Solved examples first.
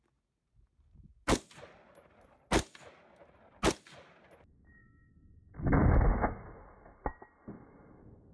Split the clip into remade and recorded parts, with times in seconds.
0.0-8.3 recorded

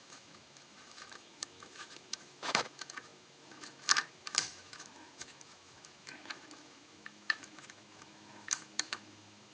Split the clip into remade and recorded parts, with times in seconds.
0.0-9.5 remade

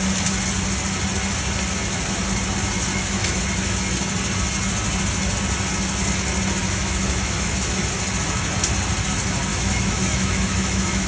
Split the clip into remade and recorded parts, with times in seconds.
0.0-2.9 recorded; 2.9-3.4 remade; 3.4-6.6 recorded; 6.6-7.8 remade; 7.8-9.5 recorded; 9.5-11.1 remade

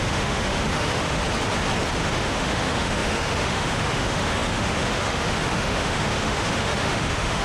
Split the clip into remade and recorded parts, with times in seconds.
0.0-1.2 remade; 1.2-2.0 recorded; 2.0-7.4 remade

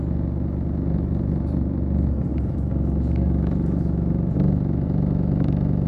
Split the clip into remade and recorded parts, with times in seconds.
0.0-2.3 recorded; 2.3-5.9 remade

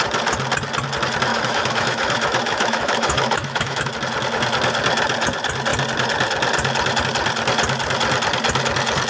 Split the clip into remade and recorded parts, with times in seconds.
0.0-1.3 recorded; 1.3-3.9 remade; 3.9-9.1 recorded

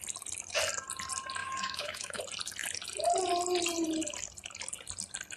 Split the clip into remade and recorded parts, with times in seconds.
0.0-1.4 recorded; 1.4-2.2 remade; 2.2-5.4 recorded

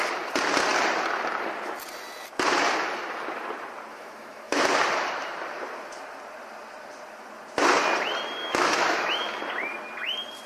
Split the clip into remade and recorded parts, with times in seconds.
0.0-3.9 recorded; 3.9-4.6 remade; 4.6-8.4 recorded; 8.4-9.4 remade; 9.4-10.5 recorded